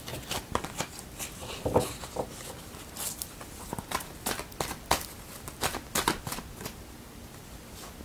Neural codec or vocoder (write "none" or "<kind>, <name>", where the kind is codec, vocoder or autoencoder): vocoder, BigVGAN v2